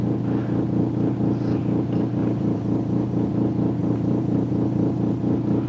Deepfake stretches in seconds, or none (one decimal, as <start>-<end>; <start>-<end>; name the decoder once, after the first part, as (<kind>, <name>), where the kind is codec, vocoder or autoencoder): 2.2-3.3 (vocoder, BigVGAN v2); 3.8-5.2